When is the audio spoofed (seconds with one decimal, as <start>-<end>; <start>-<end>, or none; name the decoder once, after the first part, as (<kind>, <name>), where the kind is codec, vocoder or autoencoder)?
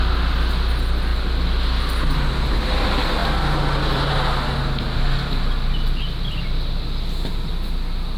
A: none